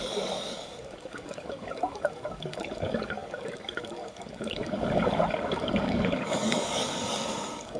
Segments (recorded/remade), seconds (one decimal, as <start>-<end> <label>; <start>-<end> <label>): 0.0-7.8 remade